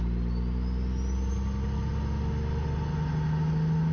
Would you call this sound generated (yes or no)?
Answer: no